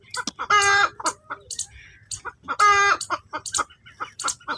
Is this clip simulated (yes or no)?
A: no